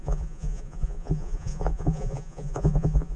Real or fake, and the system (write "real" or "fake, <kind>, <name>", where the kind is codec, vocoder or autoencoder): fake, vocoder, Vocos